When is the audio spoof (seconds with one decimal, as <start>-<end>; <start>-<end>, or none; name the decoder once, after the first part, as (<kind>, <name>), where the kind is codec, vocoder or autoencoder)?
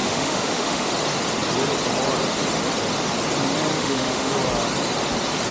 0.0-0.9 (autoencoder, DAC-VAE); 3.7-4.3